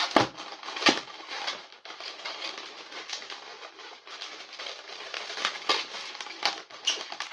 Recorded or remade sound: recorded